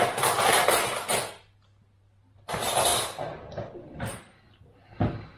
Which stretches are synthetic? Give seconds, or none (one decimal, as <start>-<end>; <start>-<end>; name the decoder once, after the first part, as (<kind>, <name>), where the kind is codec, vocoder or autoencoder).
none